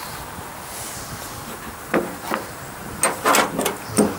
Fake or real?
real